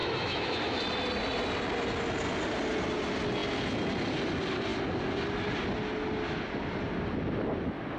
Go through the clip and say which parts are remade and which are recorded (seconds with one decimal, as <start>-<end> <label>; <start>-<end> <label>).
0.0-0.8 remade; 0.8-8.0 recorded